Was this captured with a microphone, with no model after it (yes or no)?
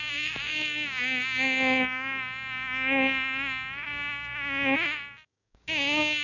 no